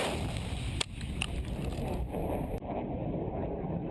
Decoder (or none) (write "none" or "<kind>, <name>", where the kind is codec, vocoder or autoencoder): none